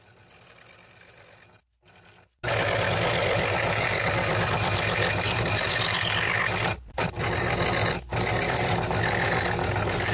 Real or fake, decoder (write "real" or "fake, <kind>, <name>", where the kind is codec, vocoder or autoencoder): real